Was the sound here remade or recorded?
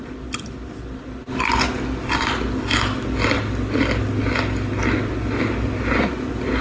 recorded